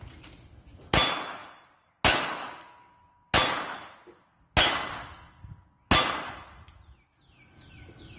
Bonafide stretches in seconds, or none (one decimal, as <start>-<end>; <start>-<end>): 0.0-8.2